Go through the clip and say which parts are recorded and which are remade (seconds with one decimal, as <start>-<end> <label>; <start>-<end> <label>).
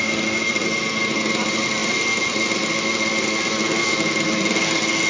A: 0.0-5.1 recorded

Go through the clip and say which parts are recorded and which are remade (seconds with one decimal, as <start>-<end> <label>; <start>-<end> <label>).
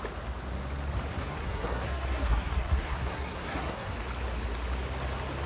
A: 0.0-1.2 recorded; 1.2-3.9 remade; 3.9-5.5 recorded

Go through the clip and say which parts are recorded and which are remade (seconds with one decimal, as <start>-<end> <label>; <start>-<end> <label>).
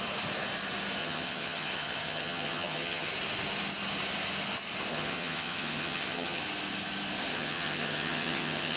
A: 0.0-1.0 recorded; 1.0-3.1 remade; 3.1-4.9 recorded; 4.9-6.4 remade; 6.4-7.3 recorded; 7.3-8.8 remade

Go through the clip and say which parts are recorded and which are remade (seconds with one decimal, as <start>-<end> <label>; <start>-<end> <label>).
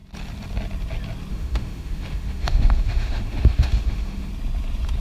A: 0.0-1.3 recorded; 1.3-4.3 remade; 4.3-5.0 recorded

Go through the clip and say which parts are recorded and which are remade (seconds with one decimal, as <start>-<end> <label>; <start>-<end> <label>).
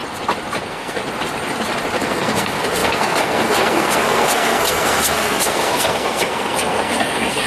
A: 0.0-0.6 recorded; 0.6-1.0 remade; 1.0-2.0 recorded; 2.0-7.5 remade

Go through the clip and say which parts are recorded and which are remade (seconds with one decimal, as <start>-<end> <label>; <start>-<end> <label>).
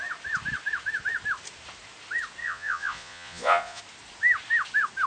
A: 0.0-2.4 recorded; 2.4-3.8 remade; 3.8-5.1 recorded